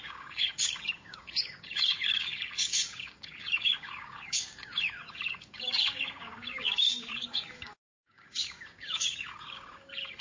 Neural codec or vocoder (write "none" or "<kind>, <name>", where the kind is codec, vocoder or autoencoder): codec, DAC